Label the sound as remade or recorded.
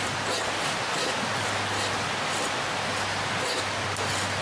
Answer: recorded